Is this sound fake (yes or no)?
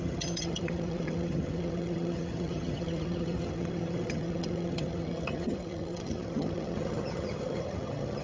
yes